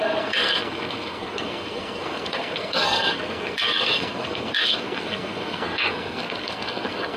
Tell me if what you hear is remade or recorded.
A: remade